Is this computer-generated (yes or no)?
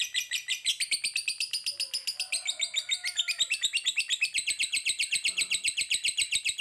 no